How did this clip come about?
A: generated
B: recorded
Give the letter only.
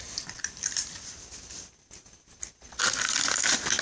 B